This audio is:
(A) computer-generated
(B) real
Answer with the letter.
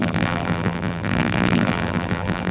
A